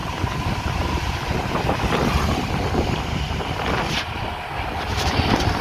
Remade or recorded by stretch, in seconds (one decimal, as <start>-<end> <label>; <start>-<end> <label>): 0.0-3.4 remade; 3.4-5.6 recorded